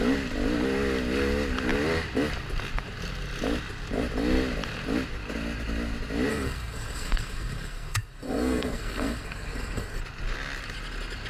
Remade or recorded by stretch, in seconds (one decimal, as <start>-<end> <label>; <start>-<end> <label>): 0.0-6.3 recorded; 6.3-10.0 remade; 10.0-11.3 recorded

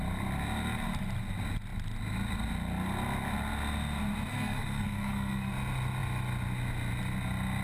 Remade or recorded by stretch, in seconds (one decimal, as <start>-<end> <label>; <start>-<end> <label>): 0.0-4.3 recorded; 4.3-5.5 remade; 5.5-7.6 recorded

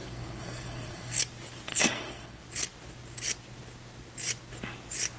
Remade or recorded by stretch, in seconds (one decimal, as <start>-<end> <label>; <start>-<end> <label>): 0.0-1.2 remade; 1.2-1.7 recorded; 1.7-2.4 remade; 2.4-5.2 recorded